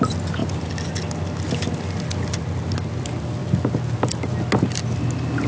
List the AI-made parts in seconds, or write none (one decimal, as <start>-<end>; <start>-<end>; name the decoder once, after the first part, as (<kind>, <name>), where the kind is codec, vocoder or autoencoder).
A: none